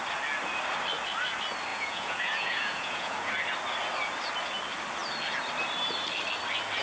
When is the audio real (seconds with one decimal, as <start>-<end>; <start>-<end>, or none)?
0.0-1.7; 3.3-6.8